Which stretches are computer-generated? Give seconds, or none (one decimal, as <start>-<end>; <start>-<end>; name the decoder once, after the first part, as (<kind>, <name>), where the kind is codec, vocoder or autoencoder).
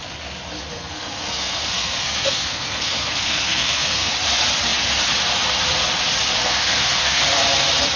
0.7-4.1 (codec, SNAC); 6.4-7.2